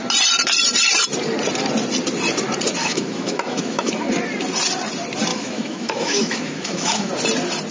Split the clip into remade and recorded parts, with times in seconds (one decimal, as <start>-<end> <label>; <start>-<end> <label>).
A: 0.0-2.8 recorded; 2.8-3.9 remade; 3.9-5.3 recorded; 5.3-7.1 remade; 7.1-7.7 recorded